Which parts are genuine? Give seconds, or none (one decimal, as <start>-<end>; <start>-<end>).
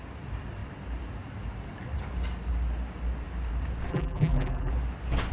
0.0-3.9; 4.7-5.3